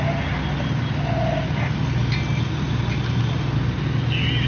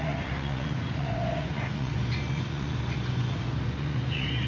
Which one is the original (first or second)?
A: first